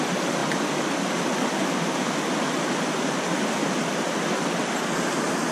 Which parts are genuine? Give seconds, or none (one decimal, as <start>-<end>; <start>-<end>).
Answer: 0.0-5.5